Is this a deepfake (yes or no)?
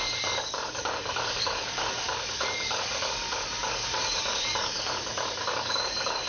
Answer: yes